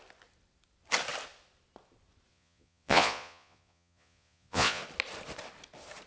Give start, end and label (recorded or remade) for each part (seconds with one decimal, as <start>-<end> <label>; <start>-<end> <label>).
0.0-2.3 recorded; 2.3-4.8 remade; 4.8-6.1 recorded